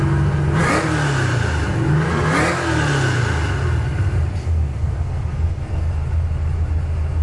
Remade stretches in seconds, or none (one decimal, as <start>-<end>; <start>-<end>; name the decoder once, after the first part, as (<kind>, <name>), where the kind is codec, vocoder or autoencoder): 4.4-5.9 (codec, SNAC)